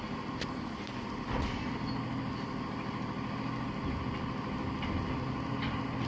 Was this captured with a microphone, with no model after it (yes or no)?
yes